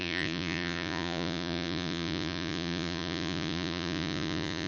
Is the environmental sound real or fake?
fake